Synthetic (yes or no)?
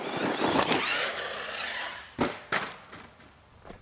no